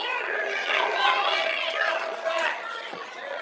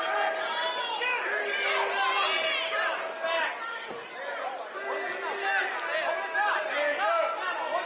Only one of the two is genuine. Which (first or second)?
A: second